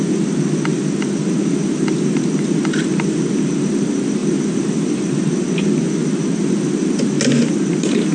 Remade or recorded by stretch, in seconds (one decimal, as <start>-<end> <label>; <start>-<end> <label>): 0.0-8.1 recorded